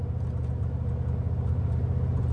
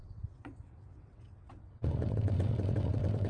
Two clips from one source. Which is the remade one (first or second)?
second